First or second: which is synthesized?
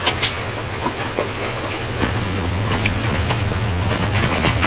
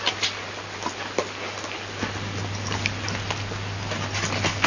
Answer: first